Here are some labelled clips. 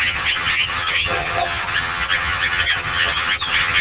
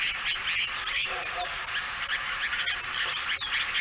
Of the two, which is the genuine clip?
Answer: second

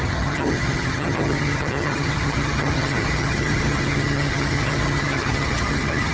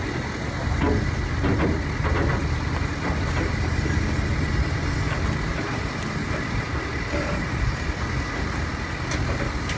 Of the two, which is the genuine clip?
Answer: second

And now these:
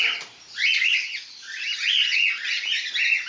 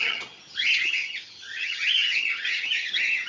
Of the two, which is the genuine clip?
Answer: first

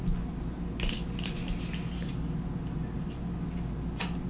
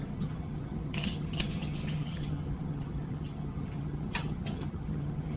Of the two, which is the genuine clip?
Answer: first